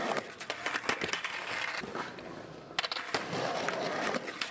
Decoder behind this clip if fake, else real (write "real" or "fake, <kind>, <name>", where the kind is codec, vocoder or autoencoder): real